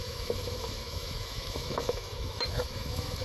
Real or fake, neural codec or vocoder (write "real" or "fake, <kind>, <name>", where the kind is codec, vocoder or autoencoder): fake, autoencoder, DAC-VAE